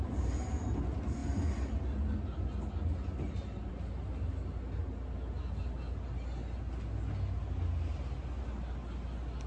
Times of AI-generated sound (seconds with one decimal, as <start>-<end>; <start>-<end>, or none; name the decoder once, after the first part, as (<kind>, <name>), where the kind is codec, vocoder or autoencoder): none